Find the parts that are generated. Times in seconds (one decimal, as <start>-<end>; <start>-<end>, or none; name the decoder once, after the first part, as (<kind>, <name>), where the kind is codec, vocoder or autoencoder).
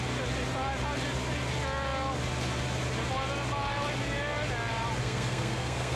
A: 5.0-6.0 (codec, SNAC)